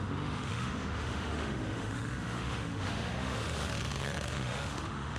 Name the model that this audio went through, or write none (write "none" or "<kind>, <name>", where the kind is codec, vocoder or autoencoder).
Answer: autoencoder, DAC-VAE